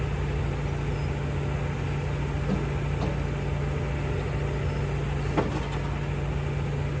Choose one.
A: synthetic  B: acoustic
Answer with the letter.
B